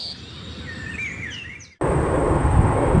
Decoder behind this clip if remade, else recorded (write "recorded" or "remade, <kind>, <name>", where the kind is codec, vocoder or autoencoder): recorded